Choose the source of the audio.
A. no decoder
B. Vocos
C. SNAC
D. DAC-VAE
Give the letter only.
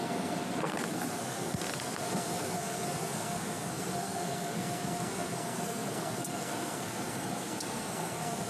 C